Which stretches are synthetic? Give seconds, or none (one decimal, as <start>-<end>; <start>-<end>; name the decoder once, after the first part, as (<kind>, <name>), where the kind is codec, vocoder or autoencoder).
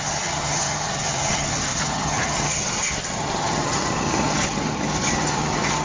0.0-5.8 (vocoder, HiFi-GAN)